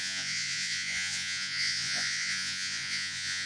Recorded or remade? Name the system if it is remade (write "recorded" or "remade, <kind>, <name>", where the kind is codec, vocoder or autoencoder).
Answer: remade, vocoder, Vocos